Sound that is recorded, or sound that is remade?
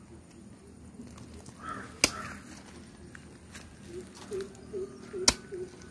recorded